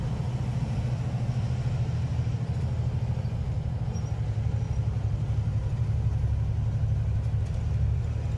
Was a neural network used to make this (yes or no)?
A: no